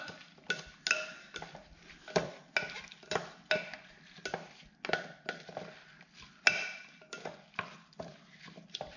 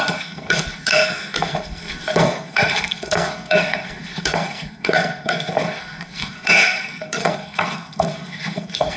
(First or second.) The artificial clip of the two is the second